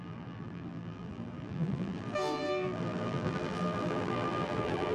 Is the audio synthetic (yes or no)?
yes